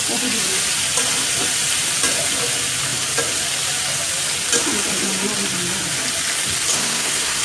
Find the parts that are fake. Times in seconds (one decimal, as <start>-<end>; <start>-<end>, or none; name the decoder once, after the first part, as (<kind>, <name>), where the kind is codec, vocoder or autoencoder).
6.7-7.4 (codec, SNAC)